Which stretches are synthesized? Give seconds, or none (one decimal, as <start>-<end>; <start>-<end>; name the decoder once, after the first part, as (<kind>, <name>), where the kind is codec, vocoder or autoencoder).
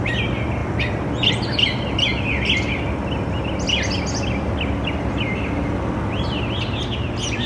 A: none